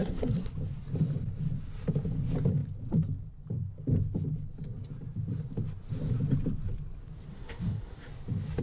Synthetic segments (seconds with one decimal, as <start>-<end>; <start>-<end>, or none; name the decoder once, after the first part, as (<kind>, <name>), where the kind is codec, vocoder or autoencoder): 0.0-0.5 (codec, SNAC); 7.3-8.1